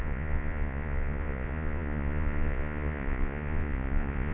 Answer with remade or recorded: remade